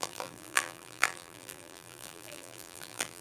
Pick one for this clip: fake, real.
fake